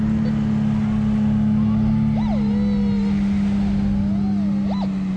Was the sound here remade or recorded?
recorded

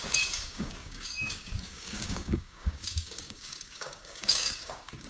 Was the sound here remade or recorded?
remade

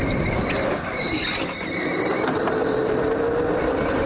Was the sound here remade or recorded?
recorded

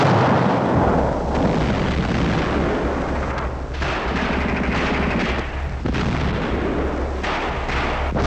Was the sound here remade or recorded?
recorded